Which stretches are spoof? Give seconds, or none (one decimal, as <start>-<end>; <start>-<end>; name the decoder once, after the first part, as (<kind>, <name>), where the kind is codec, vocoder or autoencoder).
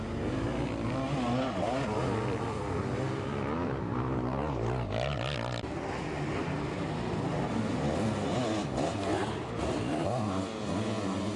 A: none